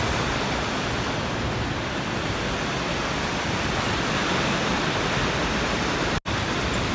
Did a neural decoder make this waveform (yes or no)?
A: no